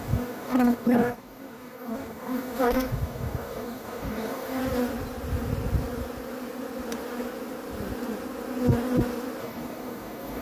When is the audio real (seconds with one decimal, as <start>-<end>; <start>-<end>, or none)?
4.6-9.4